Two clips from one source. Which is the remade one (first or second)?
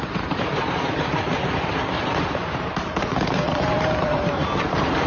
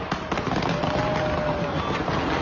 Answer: first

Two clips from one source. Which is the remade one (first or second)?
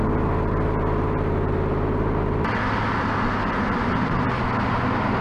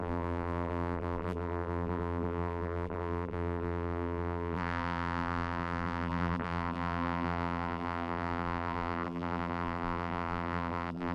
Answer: second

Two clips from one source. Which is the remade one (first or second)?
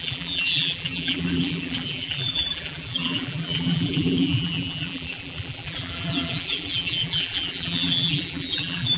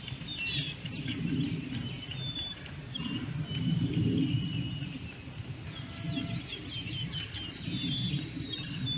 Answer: first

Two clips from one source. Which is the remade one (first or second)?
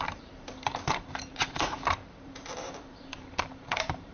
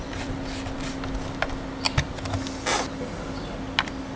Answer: first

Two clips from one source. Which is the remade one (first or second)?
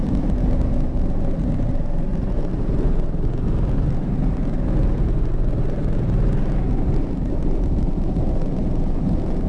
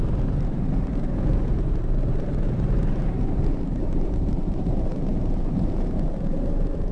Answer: second